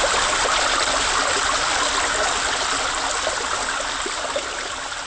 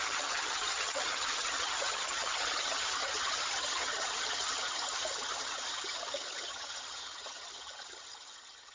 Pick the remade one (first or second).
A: second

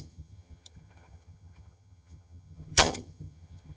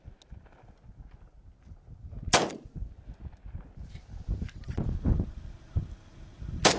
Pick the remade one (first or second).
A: first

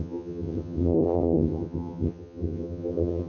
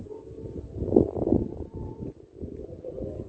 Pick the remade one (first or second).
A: first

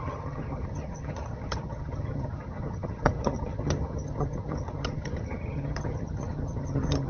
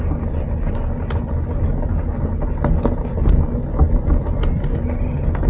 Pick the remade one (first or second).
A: first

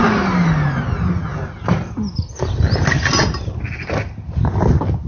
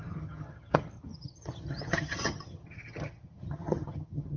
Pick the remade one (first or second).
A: second